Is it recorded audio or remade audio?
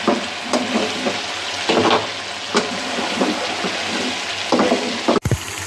recorded